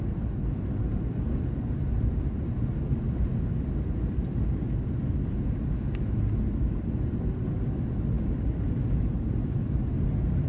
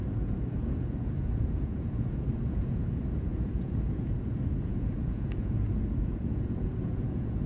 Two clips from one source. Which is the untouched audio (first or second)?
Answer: first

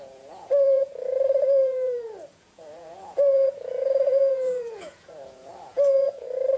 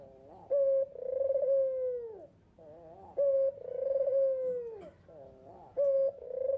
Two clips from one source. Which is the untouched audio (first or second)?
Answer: second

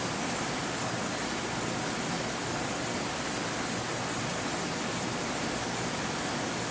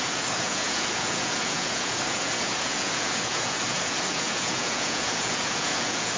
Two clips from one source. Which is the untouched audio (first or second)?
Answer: first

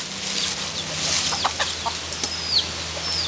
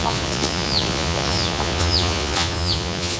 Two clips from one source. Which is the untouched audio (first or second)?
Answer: first